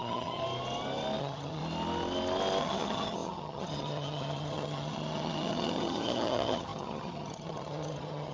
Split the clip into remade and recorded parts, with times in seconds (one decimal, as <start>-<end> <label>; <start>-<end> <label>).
0.0-0.4 remade; 0.4-1.2 recorded; 1.2-1.6 remade; 1.6-2.6 recorded; 2.6-8.3 remade